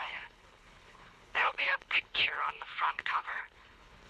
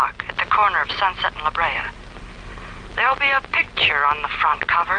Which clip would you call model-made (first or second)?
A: first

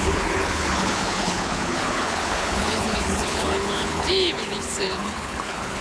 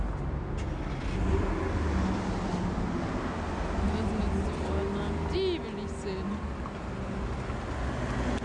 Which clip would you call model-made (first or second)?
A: first